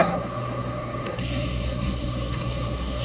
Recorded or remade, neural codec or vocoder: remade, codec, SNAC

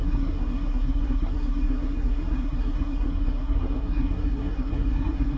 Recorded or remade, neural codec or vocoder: remade, codec, SNAC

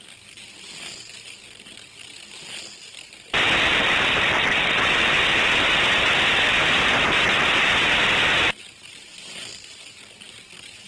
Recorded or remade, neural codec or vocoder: recorded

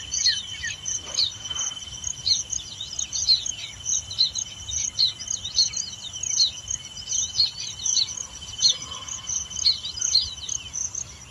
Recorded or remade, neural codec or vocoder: recorded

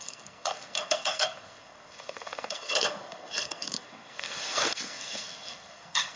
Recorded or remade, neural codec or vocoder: remade, codec, SNAC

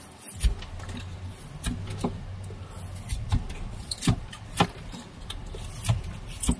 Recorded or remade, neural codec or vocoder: recorded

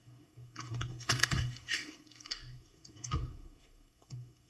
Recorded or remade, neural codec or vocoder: remade, codec, SNAC